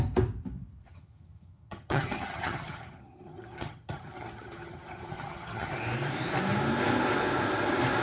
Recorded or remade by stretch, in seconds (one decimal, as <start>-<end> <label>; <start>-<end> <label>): 0.0-0.9 recorded; 0.9-5.7 remade; 5.7-8.0 recorded